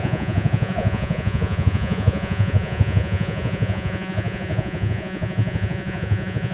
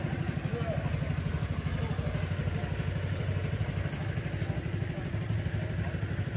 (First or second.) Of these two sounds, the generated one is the first